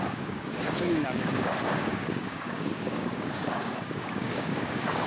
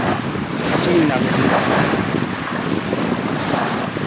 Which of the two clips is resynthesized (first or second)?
first